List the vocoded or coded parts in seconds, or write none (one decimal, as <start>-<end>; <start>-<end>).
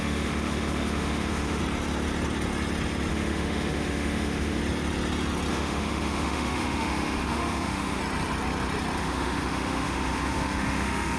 0.0-1.6; 3.1-4.6; 5.5-8.0; 9.0-11.2